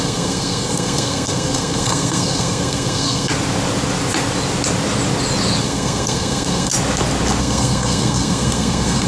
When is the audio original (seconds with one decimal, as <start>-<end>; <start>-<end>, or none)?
3.3-5.6; 6.7-7.4